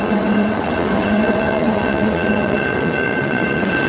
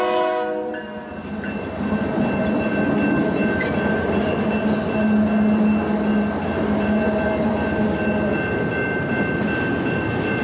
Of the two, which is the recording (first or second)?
second